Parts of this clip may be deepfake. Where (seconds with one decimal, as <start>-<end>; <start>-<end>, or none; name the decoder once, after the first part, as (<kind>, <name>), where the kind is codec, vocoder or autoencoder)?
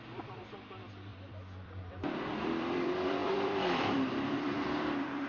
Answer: 0.0-5.3 (vocoder, BigVGAN v2)